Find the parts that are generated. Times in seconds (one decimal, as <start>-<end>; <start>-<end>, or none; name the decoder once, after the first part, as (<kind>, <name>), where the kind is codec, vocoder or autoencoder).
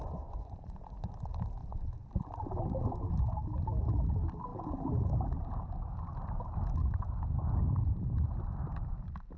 0.0-1.1 (vocoder, Vocos); 1.6-2.2